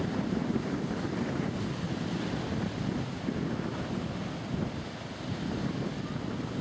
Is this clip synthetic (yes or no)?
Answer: no